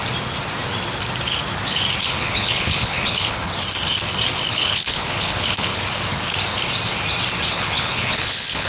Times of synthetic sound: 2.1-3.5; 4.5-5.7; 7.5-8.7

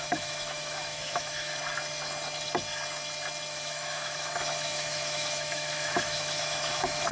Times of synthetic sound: 0.0-1.5; 3.5-7.1